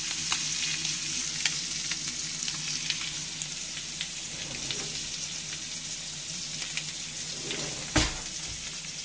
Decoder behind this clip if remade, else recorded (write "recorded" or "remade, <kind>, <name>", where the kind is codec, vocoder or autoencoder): recorded